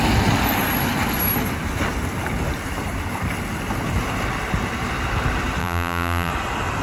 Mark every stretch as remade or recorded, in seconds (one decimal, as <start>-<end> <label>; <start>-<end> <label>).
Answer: 0.0-5.6 recorded; 5.6-6.3 remade; 6.3-6.8 recorded